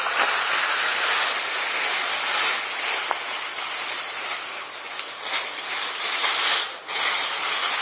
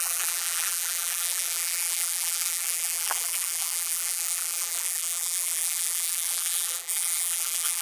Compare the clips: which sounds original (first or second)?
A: first